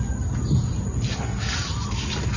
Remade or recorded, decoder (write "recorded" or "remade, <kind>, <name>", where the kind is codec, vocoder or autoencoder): recorded